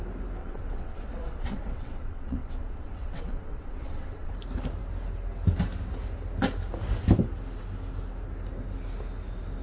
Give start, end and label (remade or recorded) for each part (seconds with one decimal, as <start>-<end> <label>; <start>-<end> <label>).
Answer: 0.0-0.4 recorded; 0.4-4.3 remade; 4.3-9.6 recorded